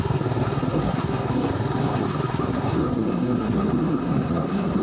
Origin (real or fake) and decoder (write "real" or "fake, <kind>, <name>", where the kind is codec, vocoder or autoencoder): fake, codec, SNAC